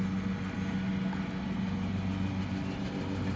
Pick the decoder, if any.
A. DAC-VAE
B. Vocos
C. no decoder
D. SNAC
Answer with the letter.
C